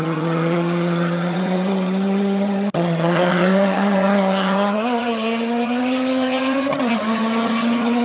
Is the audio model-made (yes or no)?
yes